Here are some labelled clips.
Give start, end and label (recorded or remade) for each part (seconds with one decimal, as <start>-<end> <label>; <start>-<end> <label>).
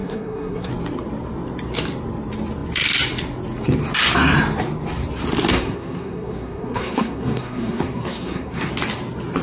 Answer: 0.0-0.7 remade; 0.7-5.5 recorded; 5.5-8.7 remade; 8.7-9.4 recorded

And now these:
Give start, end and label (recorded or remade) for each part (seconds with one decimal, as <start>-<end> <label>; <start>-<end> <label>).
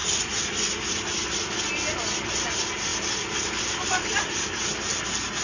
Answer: 0.0-2.9 recorded; 2.9-5.4 remade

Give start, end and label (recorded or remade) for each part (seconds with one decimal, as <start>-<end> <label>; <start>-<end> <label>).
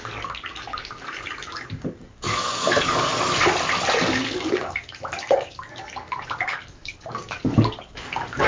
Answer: 0.0-3.1 remade; 3.1-4.0 recorded; 4.0-8.5 remade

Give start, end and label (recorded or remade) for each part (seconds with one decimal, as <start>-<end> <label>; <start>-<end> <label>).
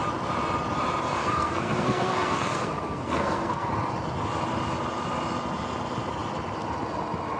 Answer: 0.0-1.2 recorded; 1.2-3.7 remade; 3.7-7.4 recorded